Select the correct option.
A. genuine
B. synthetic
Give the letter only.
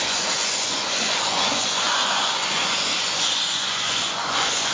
B